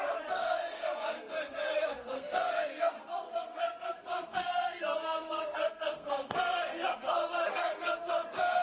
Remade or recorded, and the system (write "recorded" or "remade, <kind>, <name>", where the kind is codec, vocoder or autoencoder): remade, codec, SNAC